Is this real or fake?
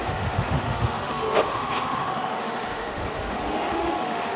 fake